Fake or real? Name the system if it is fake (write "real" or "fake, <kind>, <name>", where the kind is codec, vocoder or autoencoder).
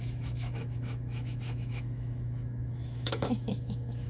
fake, autoencoder, DAC-VAE